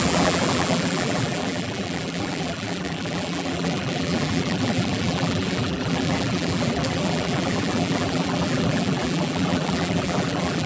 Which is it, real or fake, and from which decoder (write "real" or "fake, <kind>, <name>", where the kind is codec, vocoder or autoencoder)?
fake, vocoder, BigVGAN v2